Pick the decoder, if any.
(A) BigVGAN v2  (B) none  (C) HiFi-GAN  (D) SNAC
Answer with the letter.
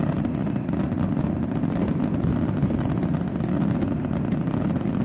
A